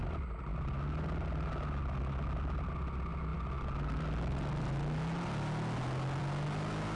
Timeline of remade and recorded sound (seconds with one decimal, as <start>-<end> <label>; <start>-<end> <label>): 0.0-7.0 recorded